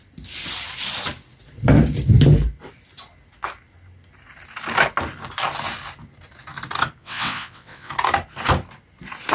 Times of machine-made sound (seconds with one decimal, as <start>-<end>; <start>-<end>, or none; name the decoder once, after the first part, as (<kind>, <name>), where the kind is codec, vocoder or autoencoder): 7.0-7.9 (vocoder, WaveNeXt)